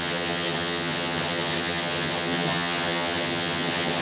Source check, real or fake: fake